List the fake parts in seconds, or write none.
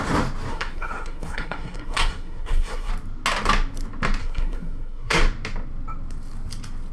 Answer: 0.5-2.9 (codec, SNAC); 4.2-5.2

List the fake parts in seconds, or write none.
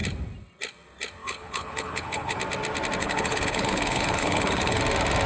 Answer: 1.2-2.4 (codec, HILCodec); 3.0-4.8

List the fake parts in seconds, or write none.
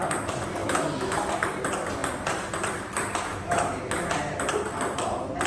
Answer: 0.6-1.3 (autoencoder, DAC-VAE); 3.3-3.8